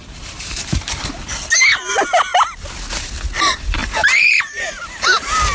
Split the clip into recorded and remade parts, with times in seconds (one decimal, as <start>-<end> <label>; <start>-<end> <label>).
0.0-1.2 remade; 1.2-1.9 recorded; 1.9-2.3 remade; 2.3-3.4 recorded; 3.4-5.5 remade